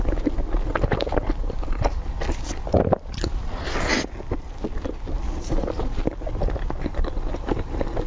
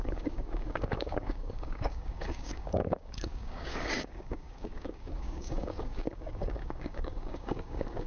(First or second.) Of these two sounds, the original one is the first